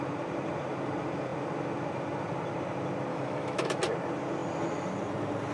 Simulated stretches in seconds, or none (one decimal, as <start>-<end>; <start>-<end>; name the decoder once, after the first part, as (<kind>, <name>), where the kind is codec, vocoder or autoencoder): 3.1-3.8 (autoencoder, DAC-VAE)

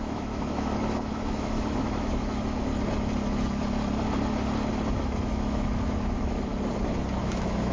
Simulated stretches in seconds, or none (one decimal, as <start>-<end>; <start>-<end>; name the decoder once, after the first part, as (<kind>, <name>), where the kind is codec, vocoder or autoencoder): 0.0-2.7 (autoencoder, DAC-VAE); 4.9-6.5; 7.2-7.7